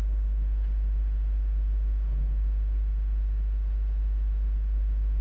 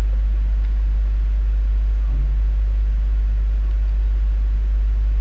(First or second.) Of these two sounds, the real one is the second